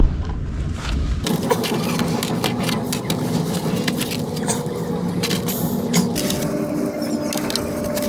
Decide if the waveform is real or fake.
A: real